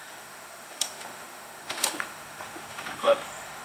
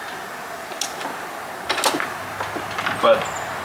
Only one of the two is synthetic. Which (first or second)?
first